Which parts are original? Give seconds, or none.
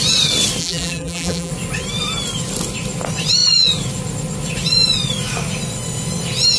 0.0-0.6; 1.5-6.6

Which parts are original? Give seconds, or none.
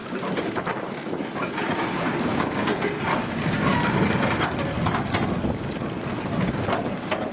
0.0-1.7; 2.6-7.3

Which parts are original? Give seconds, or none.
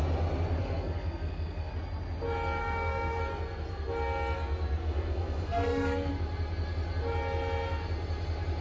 0.0-0.6; 1.7-2.6; 3.2-4.8; 6.1-8.6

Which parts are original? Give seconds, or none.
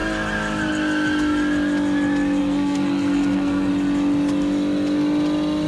0.0-2.4; 3.7-5.7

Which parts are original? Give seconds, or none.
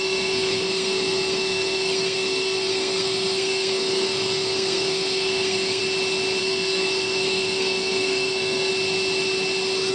5.8-6.4; 8.7-9.9